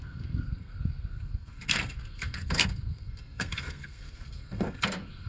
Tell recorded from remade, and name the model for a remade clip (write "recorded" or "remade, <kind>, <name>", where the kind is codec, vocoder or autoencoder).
remade, codec, SNAC